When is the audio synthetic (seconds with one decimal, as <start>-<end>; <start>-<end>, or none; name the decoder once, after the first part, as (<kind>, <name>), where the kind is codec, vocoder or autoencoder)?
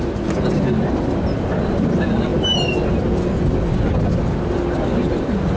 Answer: none